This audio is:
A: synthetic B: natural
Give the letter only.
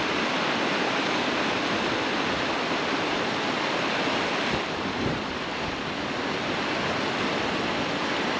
B